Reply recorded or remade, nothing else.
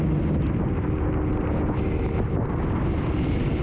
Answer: recorded